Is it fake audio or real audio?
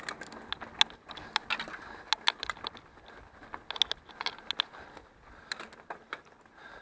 real